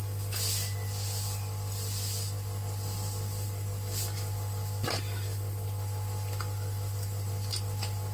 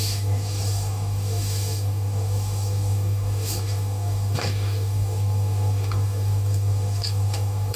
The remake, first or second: second